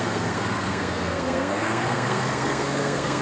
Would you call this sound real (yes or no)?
no